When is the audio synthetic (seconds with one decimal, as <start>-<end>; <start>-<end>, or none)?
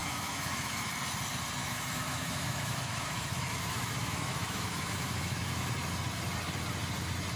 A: 0.0-0.9; 1.6-5.7